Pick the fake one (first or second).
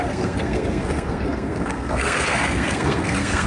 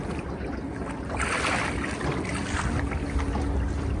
first